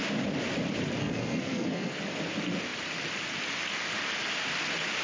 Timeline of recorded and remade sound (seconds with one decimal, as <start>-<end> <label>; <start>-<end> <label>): 0.0-1.0 recorded; 1.0-2.0 remade; 2.0-5.0 recorded